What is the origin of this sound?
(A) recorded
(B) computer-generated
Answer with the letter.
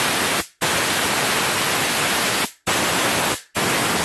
A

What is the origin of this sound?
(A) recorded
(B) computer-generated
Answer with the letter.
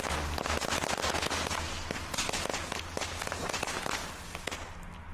A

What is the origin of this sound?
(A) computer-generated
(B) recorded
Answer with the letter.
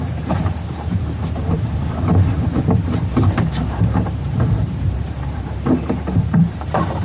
A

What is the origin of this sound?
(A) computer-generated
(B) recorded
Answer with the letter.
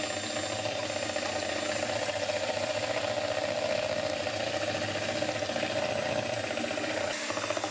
B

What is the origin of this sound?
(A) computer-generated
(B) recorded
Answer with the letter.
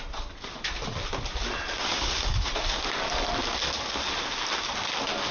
B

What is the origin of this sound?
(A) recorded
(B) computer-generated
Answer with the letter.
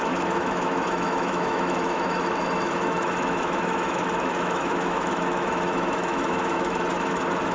B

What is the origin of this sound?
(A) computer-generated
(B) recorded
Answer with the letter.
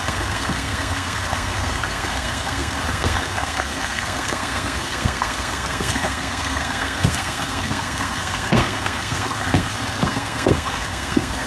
A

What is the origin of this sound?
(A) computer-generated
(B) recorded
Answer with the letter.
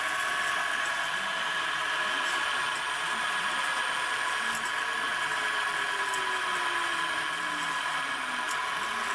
B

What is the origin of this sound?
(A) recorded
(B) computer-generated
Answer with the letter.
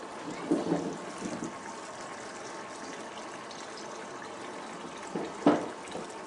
A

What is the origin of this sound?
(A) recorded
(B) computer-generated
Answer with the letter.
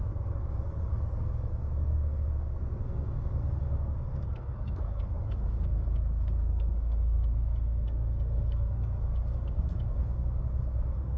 B